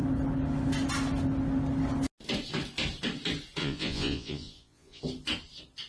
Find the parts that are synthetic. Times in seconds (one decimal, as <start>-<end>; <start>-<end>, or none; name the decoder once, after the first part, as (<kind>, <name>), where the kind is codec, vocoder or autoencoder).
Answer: 3.6-5.0 (vocoder, Vocos)